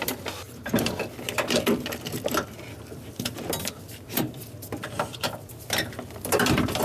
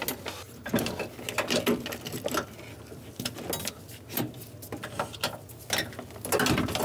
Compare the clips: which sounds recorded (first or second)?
second